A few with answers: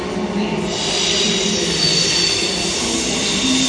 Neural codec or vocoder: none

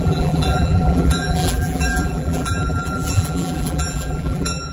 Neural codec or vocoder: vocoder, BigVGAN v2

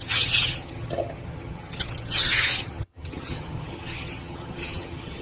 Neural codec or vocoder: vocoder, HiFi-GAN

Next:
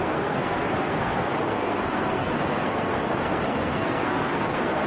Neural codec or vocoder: codec, SNAC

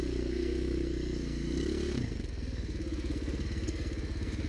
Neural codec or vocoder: codec, SNAC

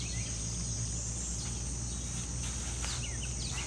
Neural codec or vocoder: none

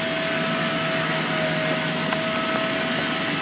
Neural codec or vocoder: none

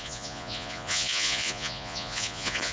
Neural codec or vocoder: vocoder, Vocos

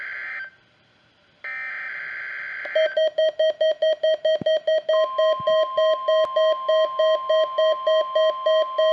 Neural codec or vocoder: none